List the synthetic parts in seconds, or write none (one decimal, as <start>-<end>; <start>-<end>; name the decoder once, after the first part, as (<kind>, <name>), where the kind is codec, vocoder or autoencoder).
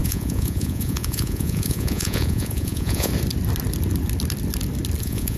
0.0-3.1 (vocoder, Vocos); 5.0-5.4